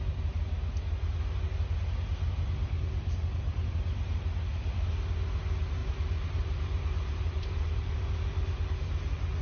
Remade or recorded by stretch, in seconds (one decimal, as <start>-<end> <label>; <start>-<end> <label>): 0.0-5.8 recorded; 5.8-8.1 remade; 8.1-9.4 recorded